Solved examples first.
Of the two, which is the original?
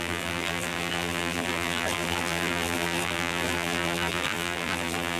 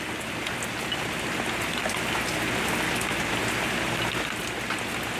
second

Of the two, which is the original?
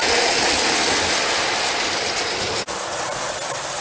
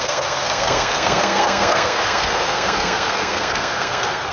first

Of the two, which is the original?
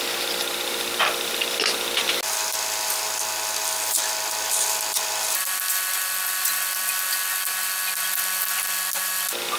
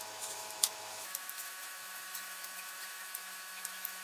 first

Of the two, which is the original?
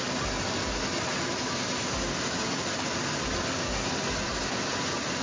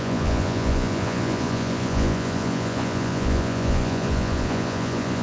first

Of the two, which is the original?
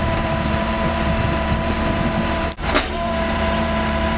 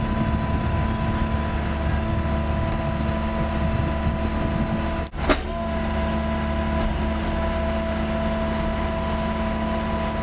second